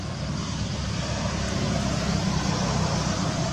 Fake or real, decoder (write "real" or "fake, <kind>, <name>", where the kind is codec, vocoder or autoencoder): real